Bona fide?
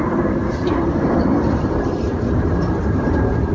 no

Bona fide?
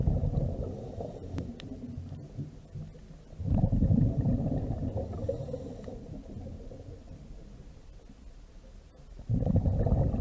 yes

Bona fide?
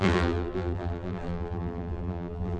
no